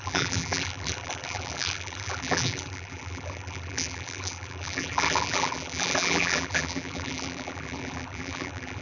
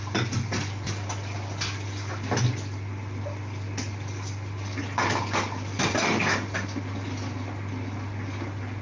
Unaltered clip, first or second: second